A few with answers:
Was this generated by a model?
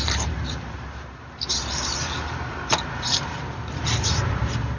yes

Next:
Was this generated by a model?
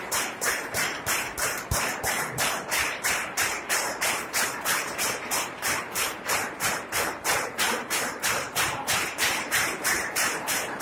yes